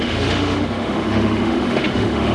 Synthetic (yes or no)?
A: yes